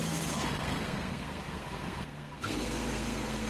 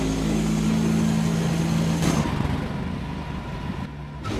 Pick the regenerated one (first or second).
first